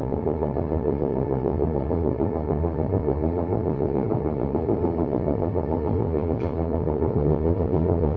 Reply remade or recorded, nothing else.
remade